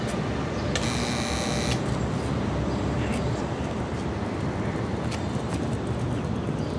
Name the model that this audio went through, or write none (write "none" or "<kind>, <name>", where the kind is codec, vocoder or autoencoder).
none